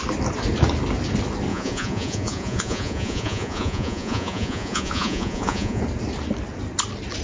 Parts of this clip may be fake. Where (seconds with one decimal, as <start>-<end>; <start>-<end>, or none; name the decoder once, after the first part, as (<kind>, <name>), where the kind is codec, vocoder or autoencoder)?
1.5-5.8 (vocoder, Vocos)